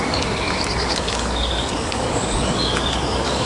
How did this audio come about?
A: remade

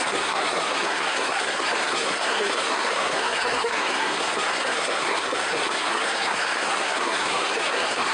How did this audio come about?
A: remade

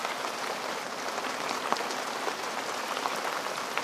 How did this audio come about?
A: recorded